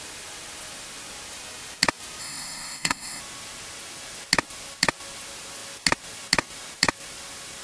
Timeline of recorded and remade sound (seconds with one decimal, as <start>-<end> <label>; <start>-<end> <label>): 0.0-2.2 recorded; 2.2-3.2 remade; 3.2-7.6 recorded